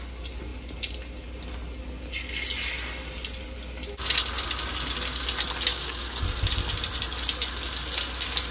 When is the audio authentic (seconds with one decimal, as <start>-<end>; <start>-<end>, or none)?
0.0-5.7; 6.2-8.5